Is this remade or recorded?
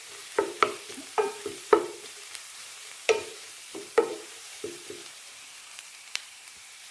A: remade